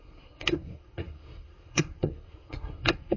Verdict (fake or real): fake